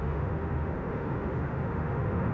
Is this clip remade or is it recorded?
remade